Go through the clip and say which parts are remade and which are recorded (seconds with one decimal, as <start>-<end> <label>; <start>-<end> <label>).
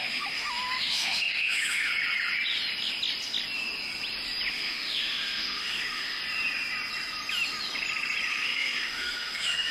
0.0-1.9 remade; 1.9-4.5 recorded; 4.5-6.2 remade; 6.2-8.3 recorded; 8.3-9.7 remade